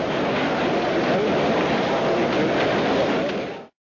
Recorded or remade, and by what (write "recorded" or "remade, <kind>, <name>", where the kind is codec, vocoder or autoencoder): recorded